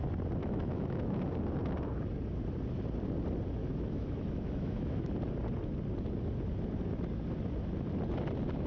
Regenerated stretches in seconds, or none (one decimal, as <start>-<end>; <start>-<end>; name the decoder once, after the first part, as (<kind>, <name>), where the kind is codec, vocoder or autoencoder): 0.4-1.2 (autoencoder, DAC-VAE); 3.6-5.1